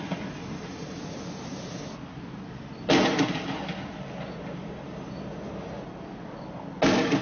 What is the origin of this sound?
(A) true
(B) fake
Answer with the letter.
A